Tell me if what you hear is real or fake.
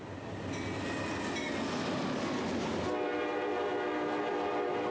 real